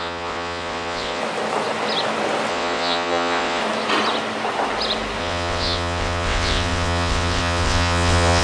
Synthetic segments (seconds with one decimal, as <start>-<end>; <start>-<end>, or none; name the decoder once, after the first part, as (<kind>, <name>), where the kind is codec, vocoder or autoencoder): 0.0-1.2 (vocoder, WaveNeXt); 2.5-3.6; 5.2-8.4